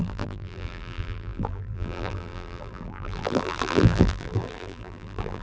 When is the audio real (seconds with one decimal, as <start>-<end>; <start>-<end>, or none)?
none